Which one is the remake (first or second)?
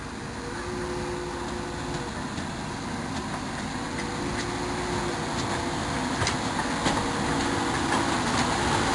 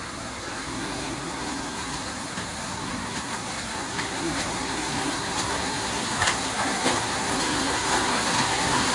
second